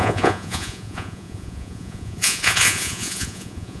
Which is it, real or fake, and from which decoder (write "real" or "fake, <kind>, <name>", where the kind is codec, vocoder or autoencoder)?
fake, vocoder, Vocos